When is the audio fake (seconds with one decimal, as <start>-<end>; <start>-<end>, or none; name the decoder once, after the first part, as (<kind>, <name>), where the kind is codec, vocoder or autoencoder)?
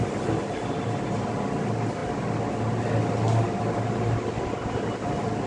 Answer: none